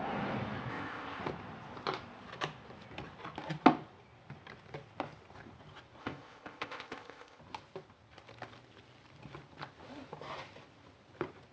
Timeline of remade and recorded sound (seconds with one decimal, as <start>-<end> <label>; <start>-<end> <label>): 0.0-0.7 recorded; 0.7-1.2 remade; 1.2-6.0 recorded; 6.0-7.4 remade; 7.4-11.5 recorded